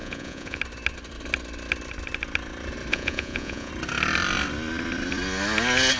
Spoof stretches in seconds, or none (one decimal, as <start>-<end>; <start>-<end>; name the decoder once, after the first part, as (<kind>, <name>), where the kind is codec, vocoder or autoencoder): 0.0-0.6 (vocoder, Vocos); 2.9-3.7